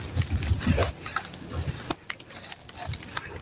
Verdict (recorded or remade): recorded